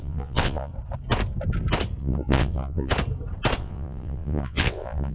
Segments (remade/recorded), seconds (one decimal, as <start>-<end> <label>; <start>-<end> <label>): 0.0-0.7 remade; 0.7-2.0 recorded; 2.0-2.9 remade; 2.9-3.6 recorded; 3.6-5.1 remade